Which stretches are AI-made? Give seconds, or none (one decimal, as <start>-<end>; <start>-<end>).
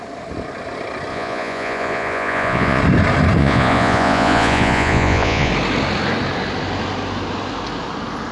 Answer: 1.1-2.8; 3.4-5.5